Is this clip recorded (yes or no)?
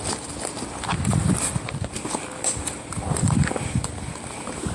yes